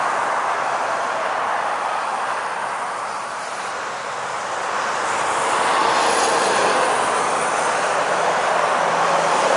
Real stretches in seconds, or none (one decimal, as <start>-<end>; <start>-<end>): 0.0-9.6